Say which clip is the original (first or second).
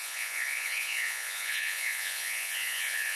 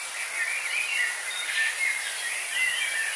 second